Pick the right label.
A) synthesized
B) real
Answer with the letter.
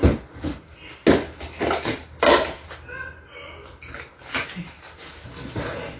B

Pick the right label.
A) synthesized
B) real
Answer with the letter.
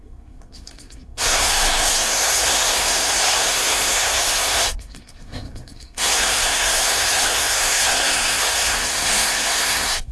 A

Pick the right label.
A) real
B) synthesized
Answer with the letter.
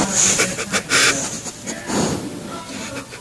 A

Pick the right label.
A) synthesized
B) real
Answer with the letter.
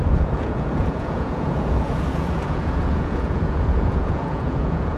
A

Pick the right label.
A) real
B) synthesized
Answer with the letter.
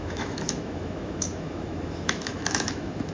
B